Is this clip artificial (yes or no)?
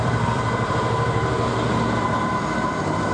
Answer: yes